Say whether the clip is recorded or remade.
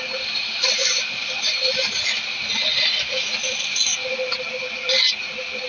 recorded